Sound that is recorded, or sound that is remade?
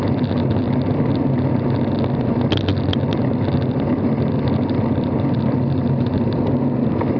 recorded